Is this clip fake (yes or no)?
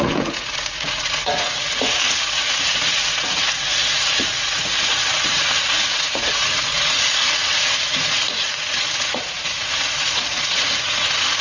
yes